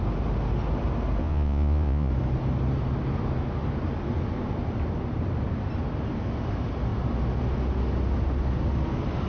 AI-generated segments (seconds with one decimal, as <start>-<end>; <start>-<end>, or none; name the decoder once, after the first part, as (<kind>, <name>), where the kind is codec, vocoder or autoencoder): 1.2-2.1 (vocoder, Vocos)